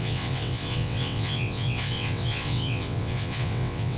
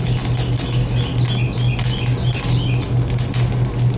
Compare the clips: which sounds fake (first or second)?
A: first